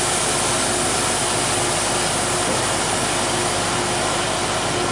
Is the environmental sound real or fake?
real